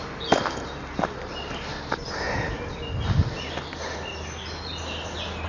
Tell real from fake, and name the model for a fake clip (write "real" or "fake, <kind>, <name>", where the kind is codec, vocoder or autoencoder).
real